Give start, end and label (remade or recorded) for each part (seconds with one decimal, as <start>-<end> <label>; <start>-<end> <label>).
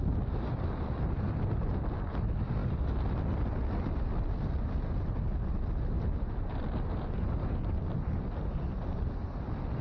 0.0-9.8 recorded